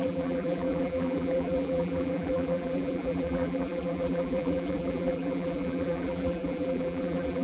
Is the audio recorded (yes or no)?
no